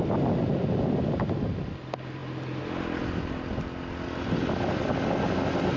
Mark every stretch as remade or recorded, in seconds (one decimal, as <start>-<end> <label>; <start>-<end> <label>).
0.0-5.8 recorded